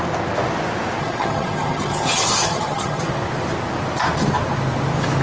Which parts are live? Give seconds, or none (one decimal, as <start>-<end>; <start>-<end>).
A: 0.0-1.0; 3.0-5.2